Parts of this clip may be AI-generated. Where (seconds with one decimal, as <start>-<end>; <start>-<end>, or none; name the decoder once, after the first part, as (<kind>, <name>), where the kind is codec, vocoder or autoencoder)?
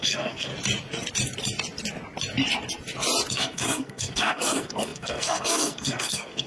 0.0-0.5 (codec, SNAC); 3.3-6.5